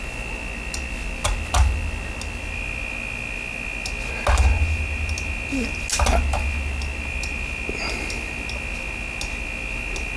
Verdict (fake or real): real